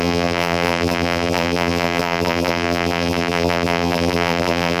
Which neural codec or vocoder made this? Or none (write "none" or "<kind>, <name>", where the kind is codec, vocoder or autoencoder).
vocoder, BigVGAN v2